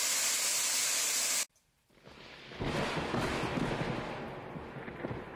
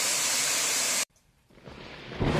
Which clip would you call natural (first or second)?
first